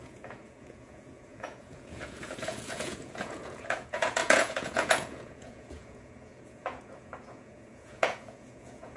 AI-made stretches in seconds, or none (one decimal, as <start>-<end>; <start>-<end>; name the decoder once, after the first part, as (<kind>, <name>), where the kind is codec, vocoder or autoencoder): 0.0-9.0 (vocoder, Vocos)